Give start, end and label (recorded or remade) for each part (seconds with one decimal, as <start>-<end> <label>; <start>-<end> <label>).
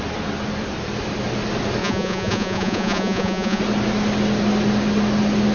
0.0-1.8 recorded; 1.8-3.6 remade; 3.6-5.5 recorded